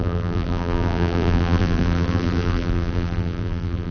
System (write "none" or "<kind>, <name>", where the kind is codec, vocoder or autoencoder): vocoder, BigVGAN v2